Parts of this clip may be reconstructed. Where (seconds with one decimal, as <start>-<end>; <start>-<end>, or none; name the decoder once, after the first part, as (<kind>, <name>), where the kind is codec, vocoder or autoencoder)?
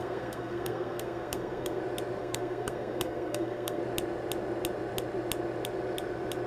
0.0-1.8 (codec, SNAC); 2.2-3.8